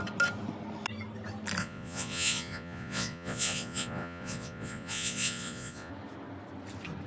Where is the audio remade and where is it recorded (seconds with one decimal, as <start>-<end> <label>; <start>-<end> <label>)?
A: 0.0-1.6 recorded; 1.6-5.9 remade; 5.9-7.1 recorded